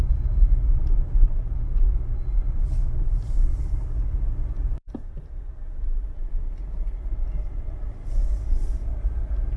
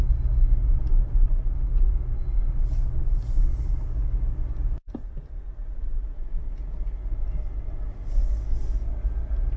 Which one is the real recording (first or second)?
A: second